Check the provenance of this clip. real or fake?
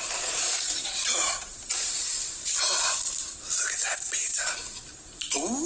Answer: fake